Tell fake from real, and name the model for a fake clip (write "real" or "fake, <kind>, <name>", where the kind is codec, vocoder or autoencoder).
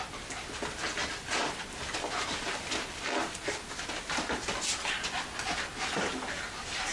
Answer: real